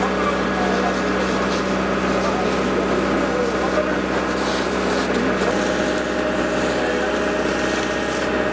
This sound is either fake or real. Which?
real